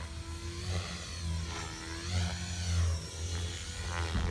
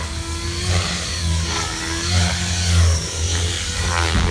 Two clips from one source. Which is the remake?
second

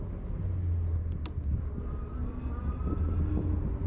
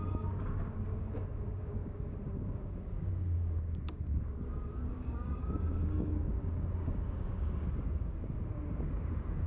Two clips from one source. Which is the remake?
second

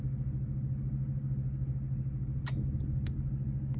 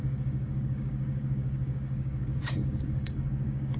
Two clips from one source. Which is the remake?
second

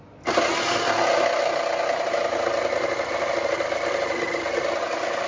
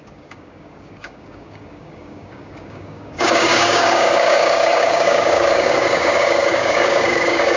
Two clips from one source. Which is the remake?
second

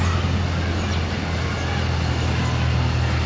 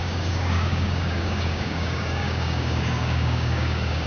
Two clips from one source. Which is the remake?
second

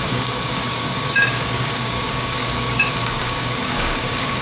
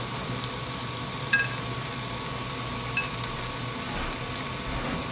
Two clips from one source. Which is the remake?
first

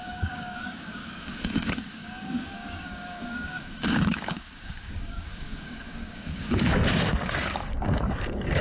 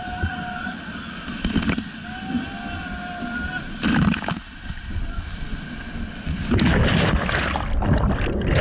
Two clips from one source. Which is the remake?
first